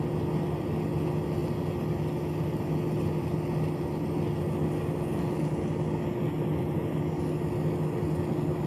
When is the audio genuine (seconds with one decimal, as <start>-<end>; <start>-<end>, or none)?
0.0-8.7